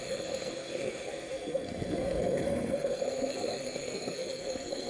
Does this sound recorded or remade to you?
remade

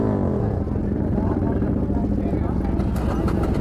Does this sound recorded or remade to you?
recorded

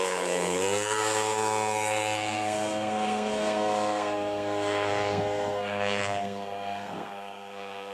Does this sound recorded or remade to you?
remade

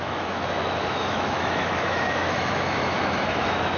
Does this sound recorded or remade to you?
remade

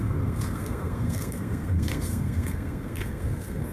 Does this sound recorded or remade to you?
remade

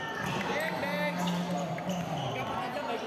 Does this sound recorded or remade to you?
recorded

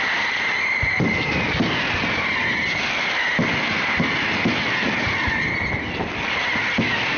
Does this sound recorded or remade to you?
recorded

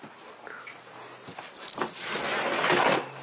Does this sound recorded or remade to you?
recorded